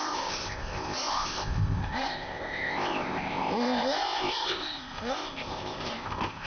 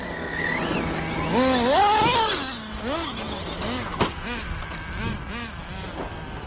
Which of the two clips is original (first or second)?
second